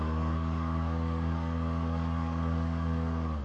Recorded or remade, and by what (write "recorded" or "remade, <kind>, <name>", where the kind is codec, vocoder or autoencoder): remade, codec, DAC